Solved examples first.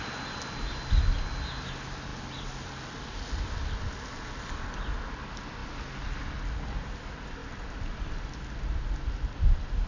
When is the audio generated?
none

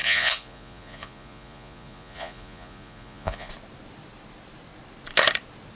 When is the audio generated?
0.0-3.5 (vocoder, Vocos)

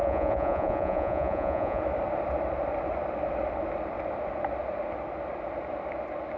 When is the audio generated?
0.0-1.8 (vocoder, Vocos)

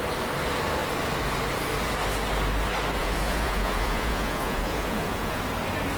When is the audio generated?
3.0-5.4 (vocoder, Vocos)

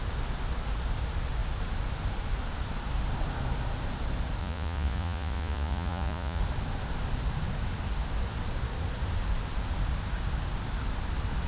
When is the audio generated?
4.4-6.4 (vocoder, Vocos)

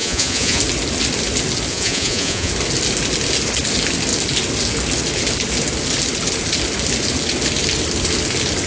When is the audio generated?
0.0-0.6 (vocoder, Vocos); 1.7-2.5

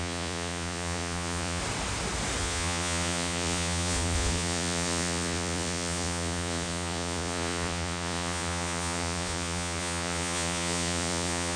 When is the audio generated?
0.0-1.6 (vocoder, Vocos); 2.4-11.6

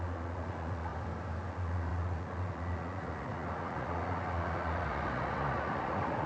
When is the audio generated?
0.0-0.9 (vocoder, Vocos); 1.5-6.3